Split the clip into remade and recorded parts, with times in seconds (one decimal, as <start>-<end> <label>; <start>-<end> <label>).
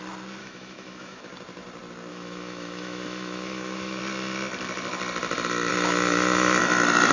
0.0-0.4 recorded; 0.4-1.2 remade; 1.2-2.1 recorded; 2.1-4.0 remade; 4.0-5.7 recorded; 5.7-6.6 remade; 6.6-7.1 recorded